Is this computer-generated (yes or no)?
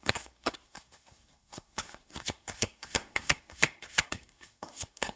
yes